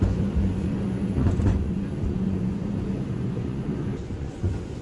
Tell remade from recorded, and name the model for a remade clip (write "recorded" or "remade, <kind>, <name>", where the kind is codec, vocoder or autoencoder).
remade, vocoder, Vocos